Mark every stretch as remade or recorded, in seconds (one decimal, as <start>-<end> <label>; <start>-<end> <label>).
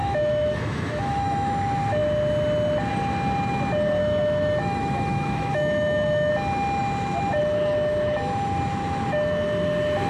0.0-1.5 remade; 1.5-4.0 recorded; 4.0-6.3 remade; 6.3-10.1 recorded